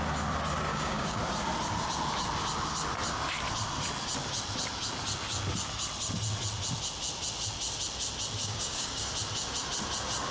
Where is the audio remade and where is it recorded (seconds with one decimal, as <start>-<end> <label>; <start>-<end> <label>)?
0.0-0.7 recorded; 0.7-1.2 remade; 1.2-8.4 recorded; 8.4-9.1 remade; 9.1-10.3 recorded